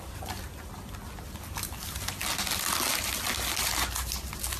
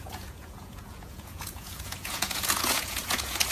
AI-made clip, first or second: second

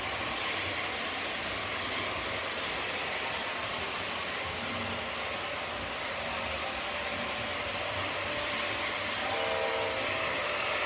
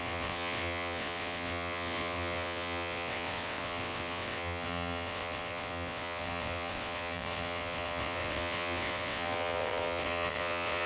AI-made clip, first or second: second